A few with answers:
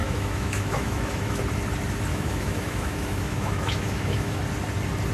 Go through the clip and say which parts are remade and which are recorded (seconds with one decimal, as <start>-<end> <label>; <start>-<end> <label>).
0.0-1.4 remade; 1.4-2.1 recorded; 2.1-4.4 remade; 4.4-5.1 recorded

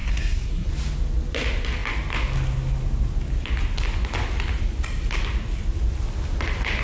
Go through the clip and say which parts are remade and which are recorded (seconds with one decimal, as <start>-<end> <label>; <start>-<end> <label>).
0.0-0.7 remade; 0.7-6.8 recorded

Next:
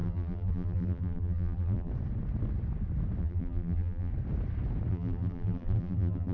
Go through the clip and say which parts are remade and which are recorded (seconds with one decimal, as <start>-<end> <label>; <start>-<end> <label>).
0.0-1.9 remade; 1.9-3.2 recorded; 3.2-4.1 remade; 4.1-4.9 recorded; 4.9-6.3 remade

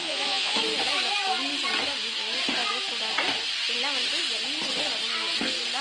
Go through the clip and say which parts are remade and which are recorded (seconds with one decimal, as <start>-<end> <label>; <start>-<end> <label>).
0.0-0.6 remade; 0.6-5.8 recorded

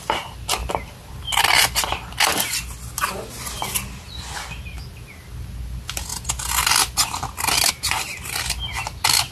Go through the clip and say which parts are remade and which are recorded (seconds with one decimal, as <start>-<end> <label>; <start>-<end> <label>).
0.0-9.3 recorded

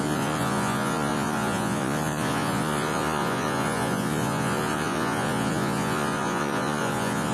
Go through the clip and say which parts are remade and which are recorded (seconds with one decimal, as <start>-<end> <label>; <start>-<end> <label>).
0.0-7.3 remade

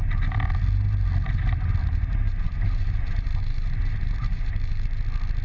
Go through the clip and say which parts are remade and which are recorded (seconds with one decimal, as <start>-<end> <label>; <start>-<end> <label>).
0.0-1.8 recorded; 1.8-4.8 remade; 4.8-5.4 recorded